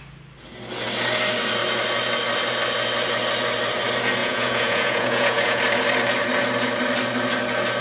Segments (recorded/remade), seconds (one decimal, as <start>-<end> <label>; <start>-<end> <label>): 0.0-4.2 recorded; 4.2-5.6 remade; 5.6-7.8 recorded